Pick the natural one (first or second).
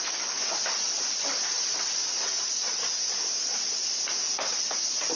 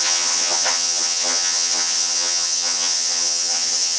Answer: first